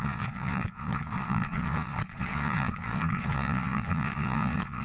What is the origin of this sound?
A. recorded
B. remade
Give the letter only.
B